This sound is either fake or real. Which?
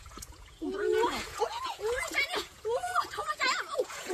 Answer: fake